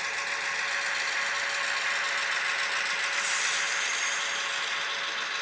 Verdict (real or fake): real